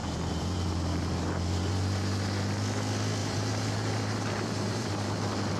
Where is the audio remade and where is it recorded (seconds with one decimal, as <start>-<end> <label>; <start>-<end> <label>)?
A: 0.0-1.7 remade; 1.7-3.2 recorded; 3.2-5.1 remade; 5.1-5.6 recorded